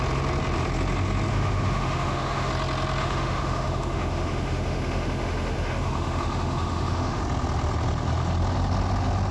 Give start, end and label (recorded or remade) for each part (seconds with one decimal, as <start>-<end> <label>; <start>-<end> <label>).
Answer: 0.0-1.3 recorded; 1.3-2.5 remade; 2.5-3.0 recorded; 3.0-7.2 remade; 7.2-9.3 recorded